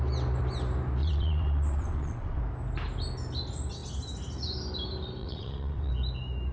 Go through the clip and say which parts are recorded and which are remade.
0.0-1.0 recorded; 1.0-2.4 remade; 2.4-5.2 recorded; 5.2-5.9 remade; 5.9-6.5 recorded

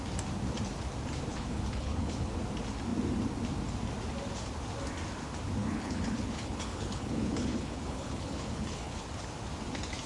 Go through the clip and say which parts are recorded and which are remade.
0.0-1.3 recorded; 1.3-2.3 remade; 2.3-5.6 recorded; 5.6-9.0 remade; 9.0-10.1 recorded

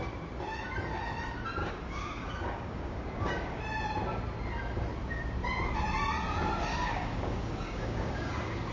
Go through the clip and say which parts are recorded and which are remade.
0.0-1.6 recorded; 1.6-3.6 remade; 3.6-6.7 recorded; 6.7-8.7 remade

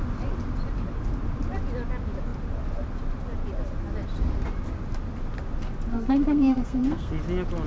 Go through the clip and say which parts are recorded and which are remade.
0.0-5.9 recorded; 5.9-7.1 remade; 7.1-7.7 recorded

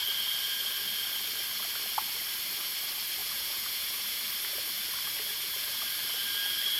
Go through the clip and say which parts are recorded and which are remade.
0.0-3.2 recorded; 3.2-4.2 remade; 4.2-5.3 recorded; 5.3-5.8 remade; 5.8-6.8 recorded

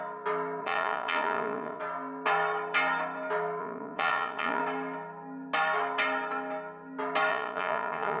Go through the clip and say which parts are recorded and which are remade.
0.0-0.6 recorded; 0.6-1.8 remade; 1.8-3.6 recorded; 3.6-4.6 remade; 4.6-7.3 recorded; 7.3-8.2 remade

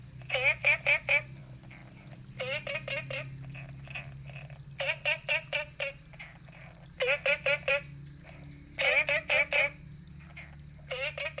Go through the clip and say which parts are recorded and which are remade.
0.0-11.4 recorded

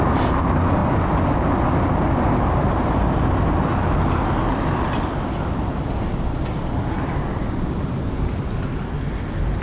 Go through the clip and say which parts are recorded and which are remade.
0.0-9.6 recorded